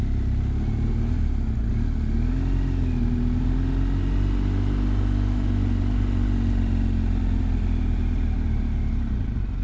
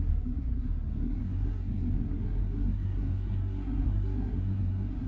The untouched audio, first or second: first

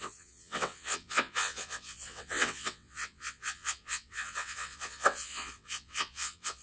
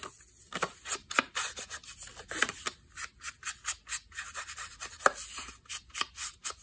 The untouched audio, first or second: second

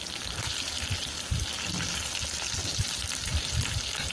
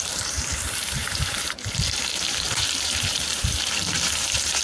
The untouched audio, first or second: first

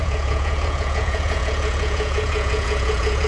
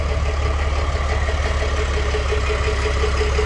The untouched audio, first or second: second